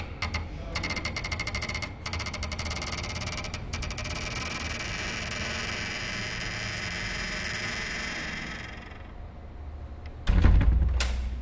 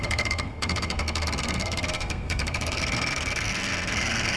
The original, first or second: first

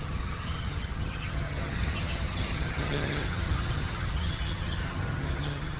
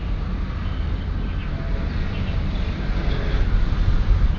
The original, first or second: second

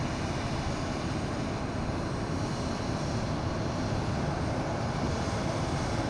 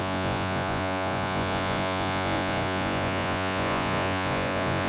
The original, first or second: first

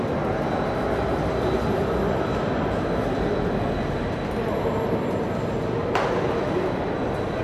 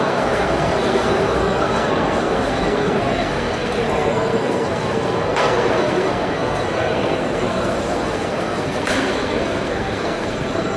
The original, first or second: first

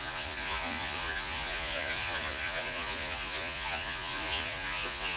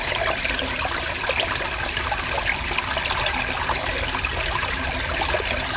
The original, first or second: second